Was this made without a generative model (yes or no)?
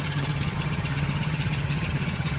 no